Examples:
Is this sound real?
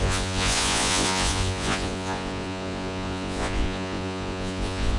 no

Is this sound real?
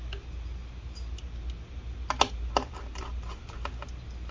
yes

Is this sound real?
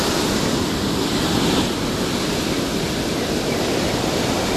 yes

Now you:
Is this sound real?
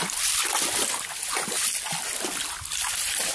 yes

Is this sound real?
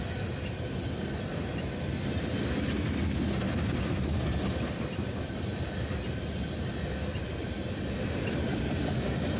yes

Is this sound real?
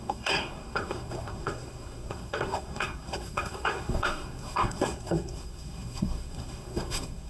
no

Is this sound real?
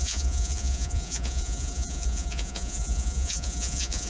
no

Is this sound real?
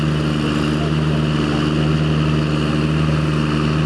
yes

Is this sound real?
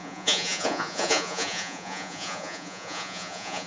no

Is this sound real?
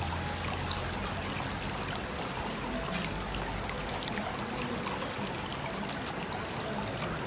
yes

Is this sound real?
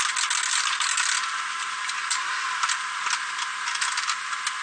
yes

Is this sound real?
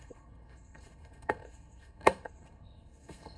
no